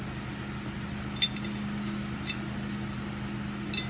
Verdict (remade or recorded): recorded